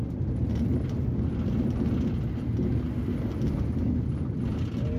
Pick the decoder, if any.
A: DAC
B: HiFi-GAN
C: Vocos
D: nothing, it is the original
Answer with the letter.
D